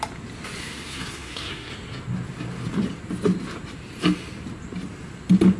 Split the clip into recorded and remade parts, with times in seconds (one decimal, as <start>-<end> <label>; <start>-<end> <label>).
0.0-0.6 recorded; 0.6-1.7 remade; 1.7-5.6 recorded